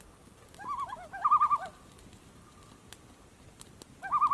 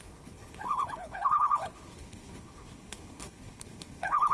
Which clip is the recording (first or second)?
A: first